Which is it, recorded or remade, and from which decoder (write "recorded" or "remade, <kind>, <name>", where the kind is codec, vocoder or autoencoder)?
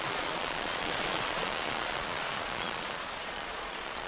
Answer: remade, vocoder, Vocos